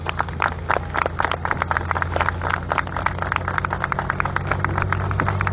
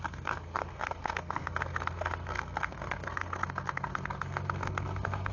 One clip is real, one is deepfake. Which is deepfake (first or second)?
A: second